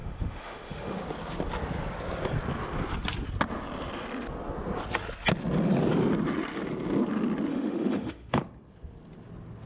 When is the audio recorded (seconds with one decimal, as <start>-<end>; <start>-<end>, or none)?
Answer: 1.0-7.5; 8.4-9.7